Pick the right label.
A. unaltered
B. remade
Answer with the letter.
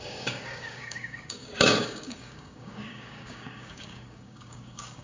B